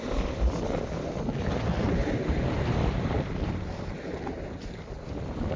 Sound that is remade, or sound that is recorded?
recorded